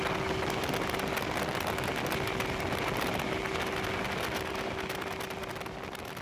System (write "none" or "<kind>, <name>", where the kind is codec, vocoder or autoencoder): none